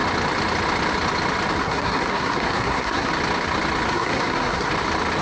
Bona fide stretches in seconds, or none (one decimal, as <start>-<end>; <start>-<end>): 0.0-1.6; 3.1-3.9; 4.7-5.2